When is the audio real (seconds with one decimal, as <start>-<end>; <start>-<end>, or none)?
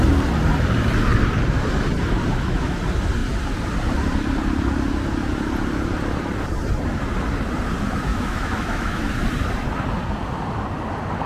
0.0-2.3; 2.8-8.1; 9.1-11.3